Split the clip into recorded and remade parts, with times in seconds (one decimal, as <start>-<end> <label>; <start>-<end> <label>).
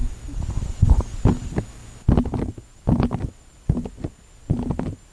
0.0-5.1 recorded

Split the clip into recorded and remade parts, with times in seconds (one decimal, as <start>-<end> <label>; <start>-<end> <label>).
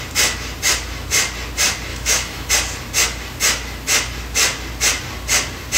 0.0-1.9 recorded; 1.9-2.5 remade; 2.5-5.8 recorded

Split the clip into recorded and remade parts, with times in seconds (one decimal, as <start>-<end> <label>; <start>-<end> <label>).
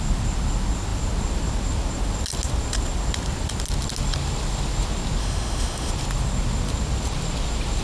0.0-5.2 recorded; 5.2-5.9 remade; 5.9-7.8 recorded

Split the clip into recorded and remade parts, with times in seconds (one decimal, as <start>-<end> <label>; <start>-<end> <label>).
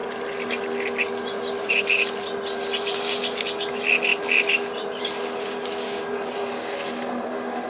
0.0-7.7 recorded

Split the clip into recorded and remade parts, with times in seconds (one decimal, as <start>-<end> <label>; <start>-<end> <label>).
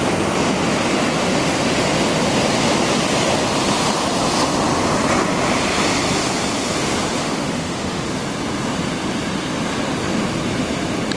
0.0-7.2 recorded; 7.2-8.1 remade; 8.1-11.2 recorded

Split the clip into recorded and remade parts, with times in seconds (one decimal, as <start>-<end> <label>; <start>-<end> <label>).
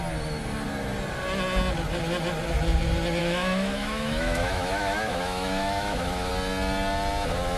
0.0-3.2 recorded; 3.2-6.3 remade; 6.3-7.6 recorded